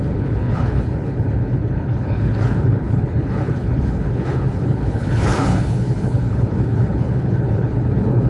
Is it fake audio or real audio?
fake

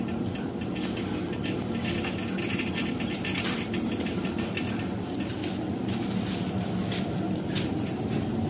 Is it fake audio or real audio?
real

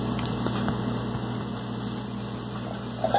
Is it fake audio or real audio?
real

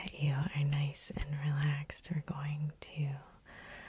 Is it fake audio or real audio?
real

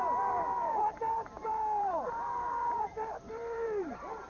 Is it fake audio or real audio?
fake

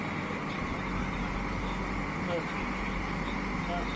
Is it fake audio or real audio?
real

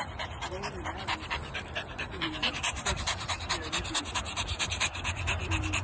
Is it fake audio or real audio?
fake